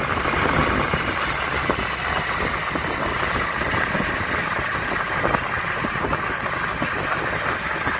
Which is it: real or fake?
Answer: real